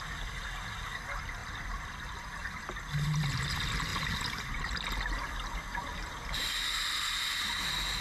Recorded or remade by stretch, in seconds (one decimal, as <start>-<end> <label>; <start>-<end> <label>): 0.0-1.4 recorded; 1.4-2.6 remade; 2.6-5.8 recorded; 5.8-6.8 remade; 6.8-8.0 recorded